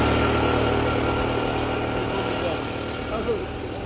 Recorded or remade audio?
recorded